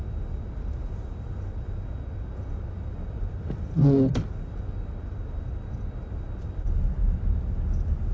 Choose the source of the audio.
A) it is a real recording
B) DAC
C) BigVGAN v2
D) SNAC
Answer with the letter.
A